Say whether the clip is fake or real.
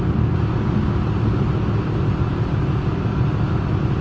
real